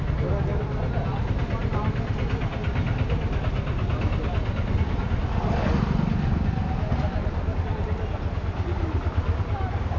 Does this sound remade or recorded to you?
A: recorded